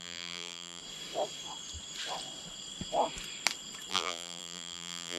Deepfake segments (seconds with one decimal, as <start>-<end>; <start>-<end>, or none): 0.0-0.8; 3.9-5.2